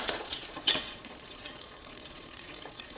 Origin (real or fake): fake